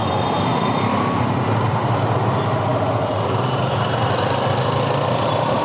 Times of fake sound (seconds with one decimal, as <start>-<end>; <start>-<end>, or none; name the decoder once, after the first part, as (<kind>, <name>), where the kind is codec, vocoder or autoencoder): none